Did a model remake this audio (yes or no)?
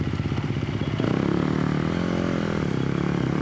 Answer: no